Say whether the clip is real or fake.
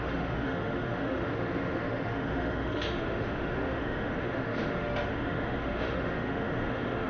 fake